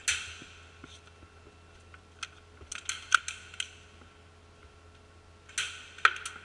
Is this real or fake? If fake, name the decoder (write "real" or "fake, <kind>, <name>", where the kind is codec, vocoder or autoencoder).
real